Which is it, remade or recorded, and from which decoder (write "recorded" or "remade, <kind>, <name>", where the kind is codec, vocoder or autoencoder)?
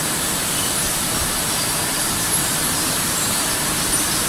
remade, vocoder, BigVGAN v2